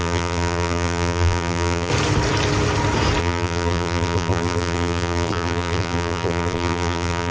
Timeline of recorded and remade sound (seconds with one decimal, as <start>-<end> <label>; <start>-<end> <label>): 0.0-1.9 remade; 1.9-3.2 recorded; 3.2-7.3 remade

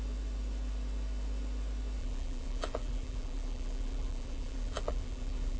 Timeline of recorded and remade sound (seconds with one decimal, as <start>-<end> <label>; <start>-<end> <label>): 0.0-2.0 recorded; 2.0-5.6 remade

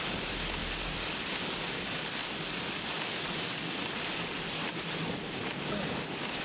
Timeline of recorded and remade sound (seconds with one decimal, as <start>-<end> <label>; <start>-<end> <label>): 0.0-0.6 recorded; 0.6-1.3 remade; 1.3-2.2 recorded; 2.2-6.0 remade; 6.0-6.4 recorded

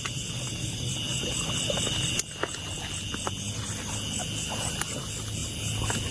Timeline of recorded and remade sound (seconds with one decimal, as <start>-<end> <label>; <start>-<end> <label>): 0.0-1.1 recorded; 1.1-2.6 remade; 2.6-6.1 recorded

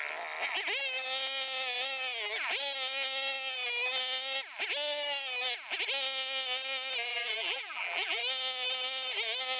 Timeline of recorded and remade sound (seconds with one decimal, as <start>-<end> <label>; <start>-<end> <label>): 0.0-7.1 recorded; 7.1-8.2 remade; 8.2-9.6 recorded

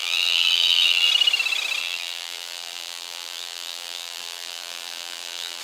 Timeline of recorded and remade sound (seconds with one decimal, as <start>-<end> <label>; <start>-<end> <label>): 0.0-1.1 remade; 1.1-1.8 recorded; 1.8-5.6 remade

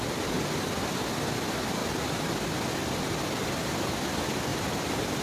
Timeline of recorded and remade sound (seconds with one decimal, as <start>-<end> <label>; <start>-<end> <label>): 0.0-5.2 recorded

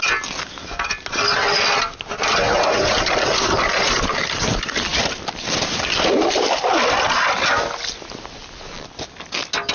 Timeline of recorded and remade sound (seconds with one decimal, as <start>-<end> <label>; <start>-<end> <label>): 0.0-4.9 recorded; 4.9-6.8 remade; 6.8-9.7 recorded